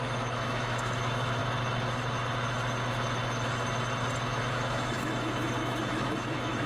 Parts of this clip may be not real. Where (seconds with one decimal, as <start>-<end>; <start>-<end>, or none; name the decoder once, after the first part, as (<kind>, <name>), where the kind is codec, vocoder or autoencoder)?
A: 0.0-1.4 (autoencoder, DAC-VAE); 4.5-6.7